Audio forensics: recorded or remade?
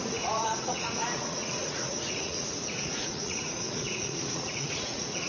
remade